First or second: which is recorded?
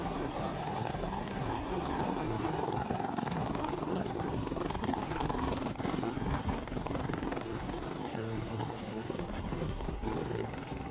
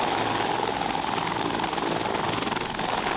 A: second